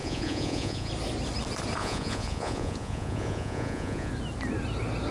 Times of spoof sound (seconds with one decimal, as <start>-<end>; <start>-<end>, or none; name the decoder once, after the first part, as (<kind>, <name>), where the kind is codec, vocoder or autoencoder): 0.0-0.9 (vocoder, Vocos); 1.8-4.1